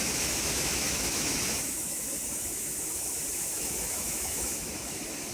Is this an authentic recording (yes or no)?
no